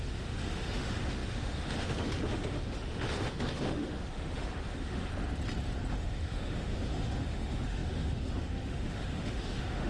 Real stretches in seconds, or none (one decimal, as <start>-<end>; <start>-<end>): 5.1-5.9